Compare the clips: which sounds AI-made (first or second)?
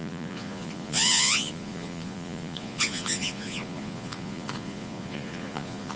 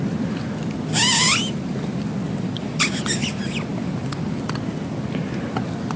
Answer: first